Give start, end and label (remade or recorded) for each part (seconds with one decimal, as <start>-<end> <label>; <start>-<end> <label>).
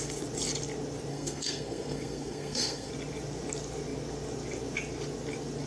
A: 0.0-1.1 recorded; 1.1-2.9 remade; 2.9-5.7 recorded